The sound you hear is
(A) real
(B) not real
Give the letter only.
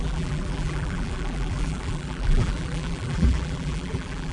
B